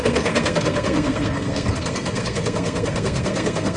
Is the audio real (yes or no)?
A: no